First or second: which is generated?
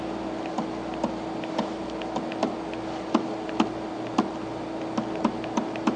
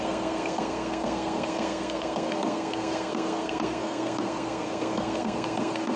second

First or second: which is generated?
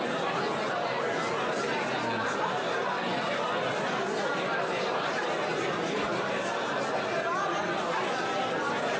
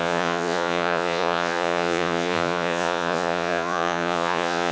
second